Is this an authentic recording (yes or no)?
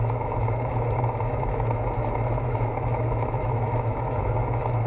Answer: no